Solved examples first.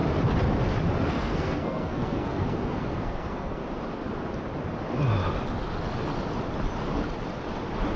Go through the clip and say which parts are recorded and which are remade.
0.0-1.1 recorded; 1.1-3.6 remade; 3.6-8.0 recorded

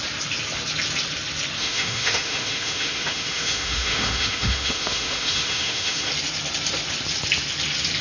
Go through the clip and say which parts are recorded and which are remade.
0.0-1.6 recorded; 1.6-6.1 remade; 6.1-8.0 recorded